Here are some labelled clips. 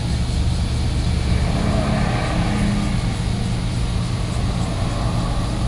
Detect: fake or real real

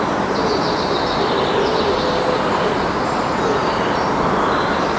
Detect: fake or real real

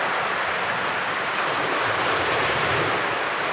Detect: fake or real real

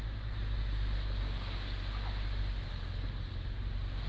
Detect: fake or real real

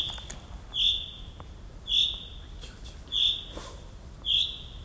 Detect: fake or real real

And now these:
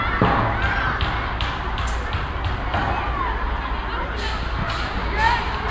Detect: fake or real real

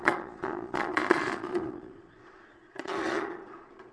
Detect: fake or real fake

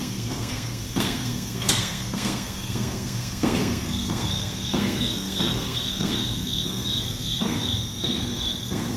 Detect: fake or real fake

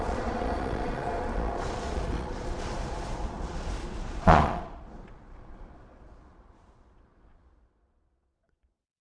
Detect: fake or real fake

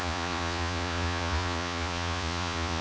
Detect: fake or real fake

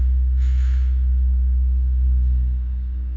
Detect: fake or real fake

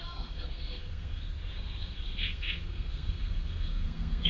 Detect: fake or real fake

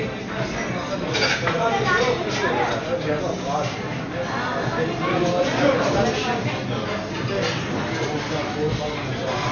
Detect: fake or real real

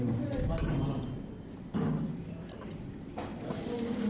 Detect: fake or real real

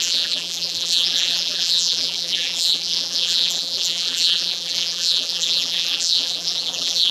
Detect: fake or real fake